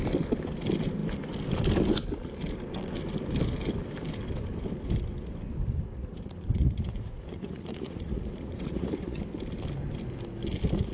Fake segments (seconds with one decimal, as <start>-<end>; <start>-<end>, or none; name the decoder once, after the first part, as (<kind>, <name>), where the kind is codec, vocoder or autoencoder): 5.9-9.2 (vocoder, Vocos)